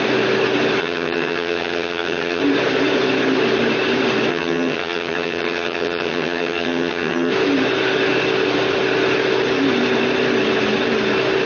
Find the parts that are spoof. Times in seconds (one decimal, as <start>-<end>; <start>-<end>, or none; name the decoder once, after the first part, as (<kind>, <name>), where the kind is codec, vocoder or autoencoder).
0.8-2.4 (vocoder, HiFi-GAN); 4.3-7.3